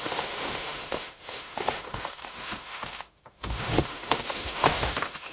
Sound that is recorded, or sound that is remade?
remade